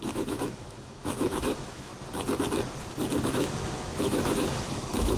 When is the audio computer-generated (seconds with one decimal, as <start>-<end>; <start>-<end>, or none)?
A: 0.0-1.9; 3.3-5.2